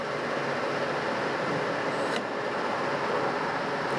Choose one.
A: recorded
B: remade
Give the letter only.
A